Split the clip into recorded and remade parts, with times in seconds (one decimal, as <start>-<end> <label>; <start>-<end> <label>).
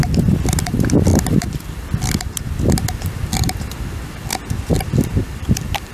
0.0-1.1 recorded; 1.1-4.3 remade; 4.3-5.2 recorded; 5.2-5.9 remade